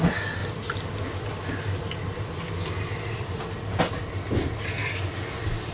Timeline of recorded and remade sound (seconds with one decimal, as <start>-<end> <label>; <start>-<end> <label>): 0.0-5.7 recorded